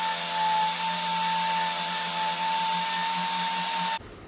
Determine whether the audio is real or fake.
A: real